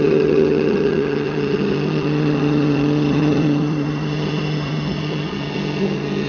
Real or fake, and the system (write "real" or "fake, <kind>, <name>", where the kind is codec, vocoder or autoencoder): fake, vocoder, HiFi-GAN